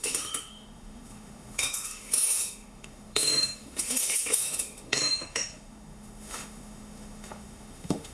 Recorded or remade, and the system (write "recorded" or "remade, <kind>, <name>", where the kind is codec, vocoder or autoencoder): remade, autoencoder, DAC-VAE